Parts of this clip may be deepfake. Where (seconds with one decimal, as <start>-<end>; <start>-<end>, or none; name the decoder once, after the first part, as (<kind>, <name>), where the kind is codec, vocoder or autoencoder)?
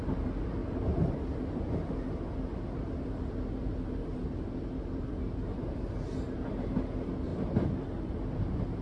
0.0-8.8 (vocoder, BigVGAN v2)